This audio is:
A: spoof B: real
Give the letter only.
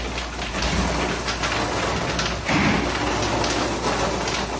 B